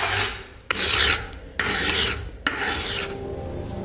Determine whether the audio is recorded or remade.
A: recorded